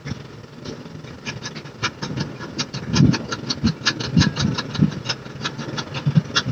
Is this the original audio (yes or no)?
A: yes